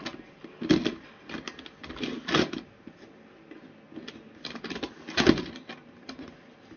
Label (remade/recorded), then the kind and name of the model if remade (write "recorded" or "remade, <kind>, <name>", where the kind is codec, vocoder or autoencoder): recorded